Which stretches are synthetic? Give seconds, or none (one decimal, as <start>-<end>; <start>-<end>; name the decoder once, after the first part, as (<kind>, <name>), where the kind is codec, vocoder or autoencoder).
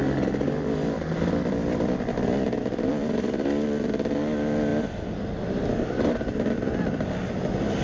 none